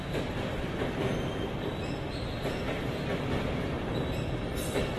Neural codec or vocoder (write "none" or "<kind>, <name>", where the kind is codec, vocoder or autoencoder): vocoder, BigVGAN v2